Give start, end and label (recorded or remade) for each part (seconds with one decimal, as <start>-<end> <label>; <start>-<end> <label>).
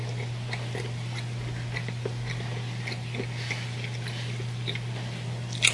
0.0-5.7 recorded